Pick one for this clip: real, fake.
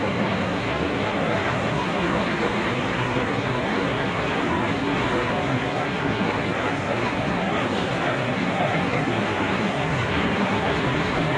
fake